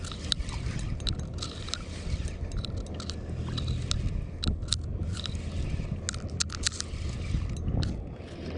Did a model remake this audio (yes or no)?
no